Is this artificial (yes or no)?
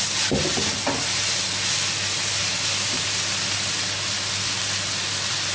no